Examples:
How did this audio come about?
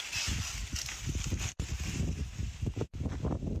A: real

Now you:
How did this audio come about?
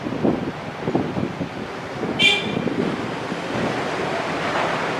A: real